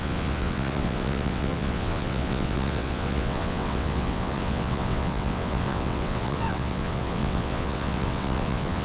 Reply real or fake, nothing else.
fake